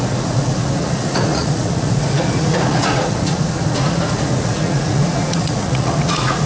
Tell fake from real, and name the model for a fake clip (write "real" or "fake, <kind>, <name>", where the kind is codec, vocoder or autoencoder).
fake, vocoder, Vocos